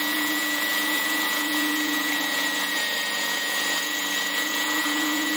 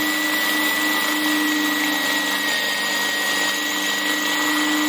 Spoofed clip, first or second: first